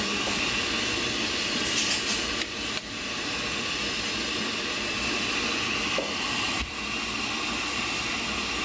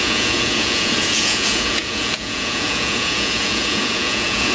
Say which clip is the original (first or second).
first